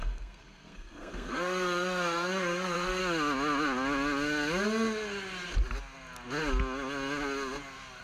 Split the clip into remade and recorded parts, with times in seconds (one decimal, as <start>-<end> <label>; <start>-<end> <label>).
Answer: 0.0-3.0 remade; 3.0-8.0 recorded

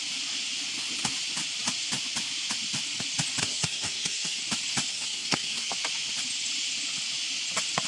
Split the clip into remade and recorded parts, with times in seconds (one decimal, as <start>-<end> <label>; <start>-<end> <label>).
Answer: 0.0-3.4 recorded; 3.4-4.4 remade; 4.4-4.9 recorded; 4.9-5.7 remade; 5.7-7.9 recorded

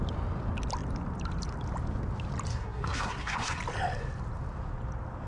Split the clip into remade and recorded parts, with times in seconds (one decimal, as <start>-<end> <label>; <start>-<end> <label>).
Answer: 0.0-2.5 recorded; 2.5-3.6 remade; 3.6-5.3 recorded

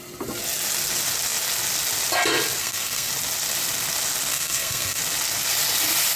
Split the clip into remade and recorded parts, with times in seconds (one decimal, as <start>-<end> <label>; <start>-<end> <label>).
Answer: 0.0-2.6 recorded; 2.6-3.1 remade; 3.1-4.3 recorded; 4.3-5.0 remade; 5.0-6.2 recorded

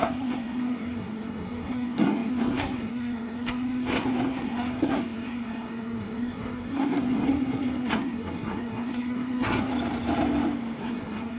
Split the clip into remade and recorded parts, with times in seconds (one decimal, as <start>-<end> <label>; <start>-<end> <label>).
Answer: 0.0-9.7 remade; 9.7-10.8 recorded; 10.8-11.4 remade

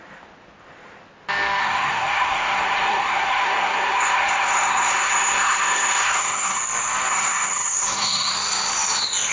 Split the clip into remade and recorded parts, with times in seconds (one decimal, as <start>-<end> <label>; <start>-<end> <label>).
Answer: 0.0-1.6 recorded; 1.6-6.6 remade; 6.6-7.1 recorded; 7.1-8.3 remade; 8.3-9.3 recorded

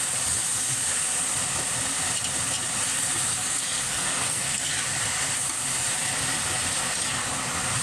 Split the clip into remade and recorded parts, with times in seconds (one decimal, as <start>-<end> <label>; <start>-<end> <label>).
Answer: 0.0-3.3 recorded; 3.3-4.7 remade; 4.7-7.8 recorded

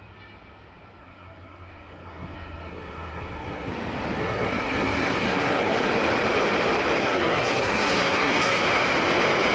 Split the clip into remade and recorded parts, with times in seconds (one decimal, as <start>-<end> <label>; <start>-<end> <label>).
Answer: 0.0-1.0 recorded; 1.0-3.7 remade; 3.7-4.2 recorded; 4.2-5.9 remade; 5.9-7.0 recorded; 7.0-8.6 remade; 8.6-9.5 recorded